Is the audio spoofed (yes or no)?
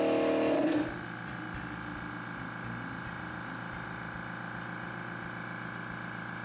no